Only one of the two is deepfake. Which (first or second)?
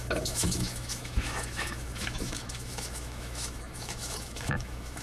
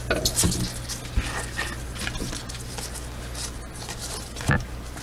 first